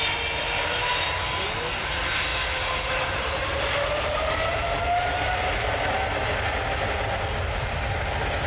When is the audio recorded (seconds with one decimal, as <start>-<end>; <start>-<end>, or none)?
0.0-3.5; 5.8-8.5